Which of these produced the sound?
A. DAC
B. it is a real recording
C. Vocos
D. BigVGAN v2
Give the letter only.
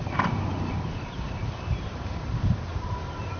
D